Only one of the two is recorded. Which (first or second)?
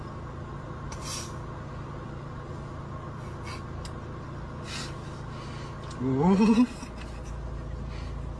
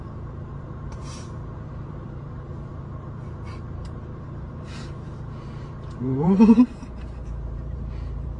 first